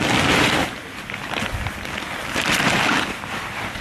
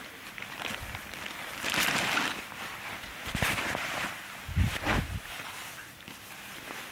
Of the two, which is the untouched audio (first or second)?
first